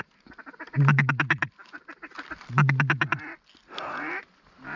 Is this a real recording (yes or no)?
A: yes